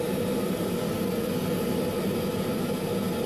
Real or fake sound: real